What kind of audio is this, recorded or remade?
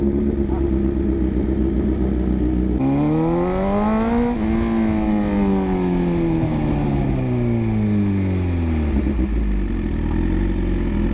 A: recorded